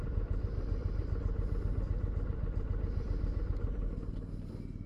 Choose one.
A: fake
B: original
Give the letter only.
A